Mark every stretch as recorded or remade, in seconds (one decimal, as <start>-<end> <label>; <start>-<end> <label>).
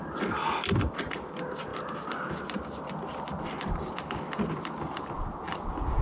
0.0-6.0 recorded